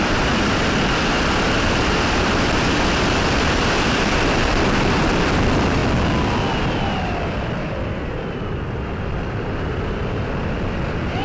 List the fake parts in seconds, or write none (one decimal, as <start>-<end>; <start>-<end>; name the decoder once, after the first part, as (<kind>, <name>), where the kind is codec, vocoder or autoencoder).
0.0-5.8 (vocoder, BigVGAN v2); 6.6-11.2